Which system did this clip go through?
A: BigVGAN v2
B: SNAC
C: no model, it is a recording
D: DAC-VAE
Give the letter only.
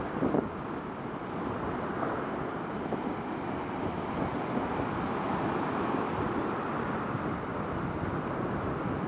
C